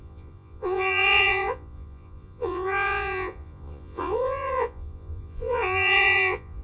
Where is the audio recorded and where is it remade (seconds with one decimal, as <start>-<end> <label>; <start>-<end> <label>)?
0.0-6.6 remade